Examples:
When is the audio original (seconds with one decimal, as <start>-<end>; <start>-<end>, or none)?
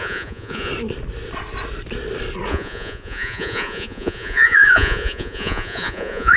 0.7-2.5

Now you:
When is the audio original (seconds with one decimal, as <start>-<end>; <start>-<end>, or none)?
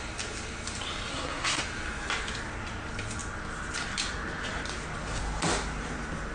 0.0-1.1; 1.6-6.3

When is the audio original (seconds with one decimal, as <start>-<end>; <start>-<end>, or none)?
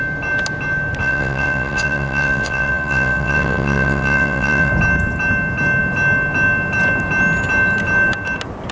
0.0-1.0; 4.7-8.7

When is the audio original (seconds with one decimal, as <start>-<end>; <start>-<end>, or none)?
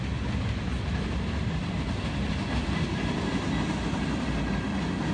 0.0-5.1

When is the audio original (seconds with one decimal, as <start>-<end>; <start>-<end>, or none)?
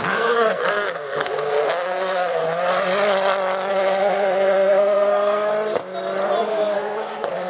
2.4-3.7; 5.5-6.4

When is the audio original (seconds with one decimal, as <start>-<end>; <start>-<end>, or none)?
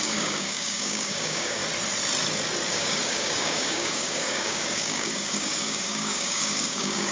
1.6-2.7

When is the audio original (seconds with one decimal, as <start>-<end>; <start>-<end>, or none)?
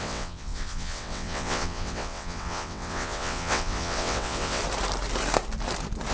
4.6-6.1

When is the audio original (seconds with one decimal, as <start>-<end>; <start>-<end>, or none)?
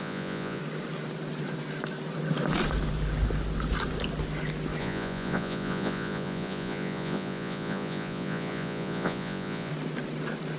0.6-4.8; 9.7-10.6